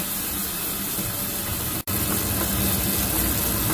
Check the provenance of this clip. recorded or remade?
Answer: recorded